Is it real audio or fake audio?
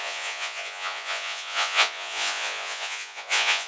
fake